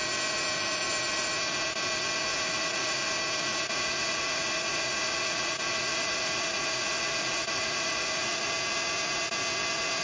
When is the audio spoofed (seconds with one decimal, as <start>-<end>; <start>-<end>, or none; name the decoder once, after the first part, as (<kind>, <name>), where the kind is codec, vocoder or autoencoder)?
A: 2.3-3.1 (vocoder, Vocos); 3.5-8.5